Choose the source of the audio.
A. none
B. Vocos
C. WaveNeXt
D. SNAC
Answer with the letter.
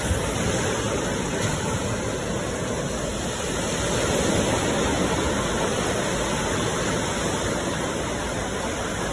A